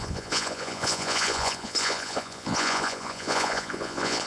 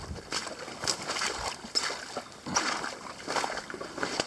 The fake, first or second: first